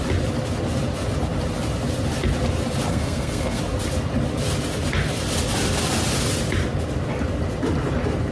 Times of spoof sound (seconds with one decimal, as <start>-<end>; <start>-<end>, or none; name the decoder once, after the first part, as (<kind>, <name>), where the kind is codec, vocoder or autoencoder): 2.9-3.6 (codec, SNAC)